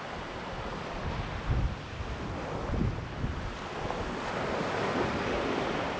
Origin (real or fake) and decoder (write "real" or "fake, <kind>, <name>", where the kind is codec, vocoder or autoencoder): real